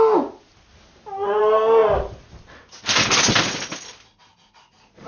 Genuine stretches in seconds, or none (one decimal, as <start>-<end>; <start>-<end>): 0.0-5.1